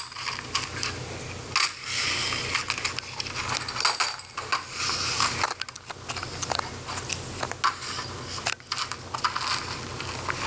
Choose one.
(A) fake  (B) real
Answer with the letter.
B